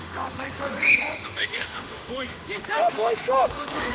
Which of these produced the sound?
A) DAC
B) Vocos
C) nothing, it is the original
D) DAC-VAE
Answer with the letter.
D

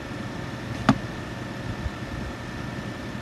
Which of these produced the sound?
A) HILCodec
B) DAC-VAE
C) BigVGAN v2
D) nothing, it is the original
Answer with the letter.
D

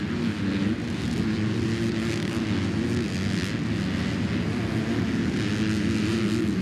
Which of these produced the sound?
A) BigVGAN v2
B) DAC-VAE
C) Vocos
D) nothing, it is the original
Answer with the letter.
D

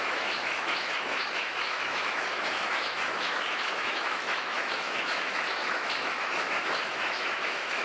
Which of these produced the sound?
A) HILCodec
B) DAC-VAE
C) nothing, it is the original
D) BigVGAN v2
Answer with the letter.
B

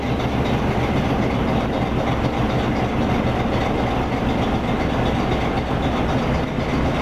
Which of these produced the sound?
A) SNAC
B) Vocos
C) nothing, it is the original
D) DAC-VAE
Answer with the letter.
C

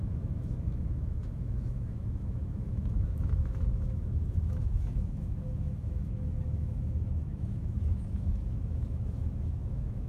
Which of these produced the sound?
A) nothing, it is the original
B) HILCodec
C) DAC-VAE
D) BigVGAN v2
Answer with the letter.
C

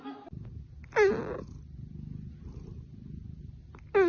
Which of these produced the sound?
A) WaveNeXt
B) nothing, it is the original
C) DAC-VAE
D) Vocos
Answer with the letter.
B